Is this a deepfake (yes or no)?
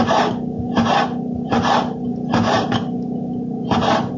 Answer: no